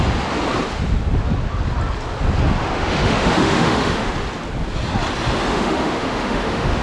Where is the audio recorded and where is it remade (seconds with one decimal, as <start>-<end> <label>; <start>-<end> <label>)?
0.0-2.6 recorded; 2.6-4.1 remade; 4.1-5.5 recorded; 5.5-6.8 remade